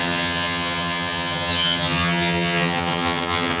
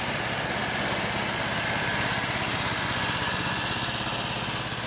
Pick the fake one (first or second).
first